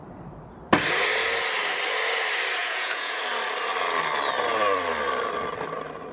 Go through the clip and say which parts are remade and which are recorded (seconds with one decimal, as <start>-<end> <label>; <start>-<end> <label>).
0.0-2.6 recorded; 2.6-3.2 remade; 3.2-6.1 recorded

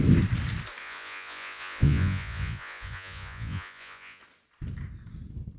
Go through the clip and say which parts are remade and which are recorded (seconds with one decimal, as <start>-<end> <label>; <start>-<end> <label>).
0.0-0.8 recorded; 0.8-4.2 remade; 4.2-5.6 recorded

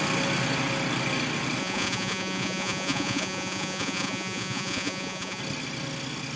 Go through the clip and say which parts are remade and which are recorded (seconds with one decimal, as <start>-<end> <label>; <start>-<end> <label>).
0.0-1.6 recorded; 1.6-5.4 remade; 5.4-6.4 recorded

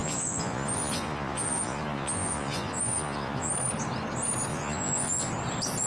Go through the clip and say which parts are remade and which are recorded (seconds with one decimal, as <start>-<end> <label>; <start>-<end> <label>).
0.0-3.5 remade; 3.5-4.5 recorded; 4.5-5.3 remade; 5.3-5.9 recorded

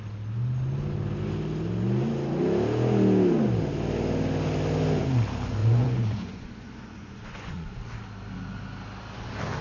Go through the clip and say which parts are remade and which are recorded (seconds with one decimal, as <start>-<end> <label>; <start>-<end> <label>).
0.0-5.6 recorded; 5.6-7.7 remade; 7.7-9.6 recorded

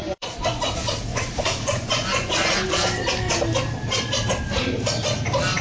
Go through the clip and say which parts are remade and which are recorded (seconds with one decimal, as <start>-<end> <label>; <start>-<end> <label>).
0.0-0.6 remade; 0.6-1.1 recorded; 1.1-2.6 remade; 2.6-5.6 recorded

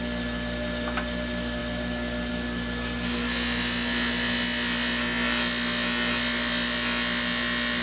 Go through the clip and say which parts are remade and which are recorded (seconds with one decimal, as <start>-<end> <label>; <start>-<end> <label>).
0.0-7.8 recorded

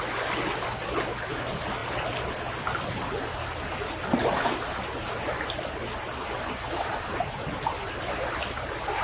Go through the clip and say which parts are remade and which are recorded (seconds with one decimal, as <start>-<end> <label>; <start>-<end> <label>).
0.0-9.0 recorded